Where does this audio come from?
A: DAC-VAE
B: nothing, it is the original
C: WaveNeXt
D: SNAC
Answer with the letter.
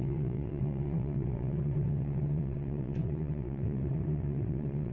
C